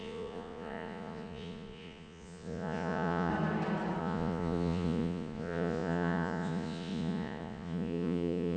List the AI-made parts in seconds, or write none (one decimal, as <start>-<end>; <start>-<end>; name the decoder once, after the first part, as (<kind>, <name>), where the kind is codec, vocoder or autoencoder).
0.0-3.3 (vocoder, Vocos); 4.0-8.6